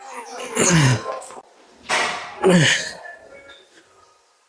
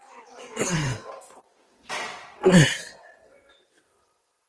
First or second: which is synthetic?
second